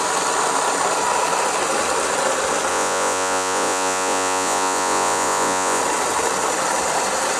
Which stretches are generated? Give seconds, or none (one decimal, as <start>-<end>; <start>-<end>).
2.7-5.8